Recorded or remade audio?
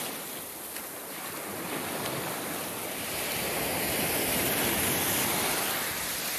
recorded